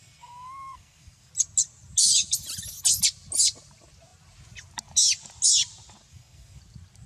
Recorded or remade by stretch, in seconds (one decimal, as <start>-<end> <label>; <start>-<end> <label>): 0.0-1.3 remade; 1.3-6.1 recorded; 6.1-6.6 remade; 6.6-7.1 recorded